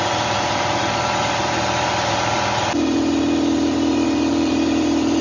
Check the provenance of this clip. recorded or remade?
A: remade